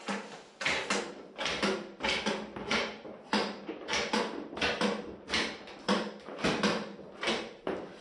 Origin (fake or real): real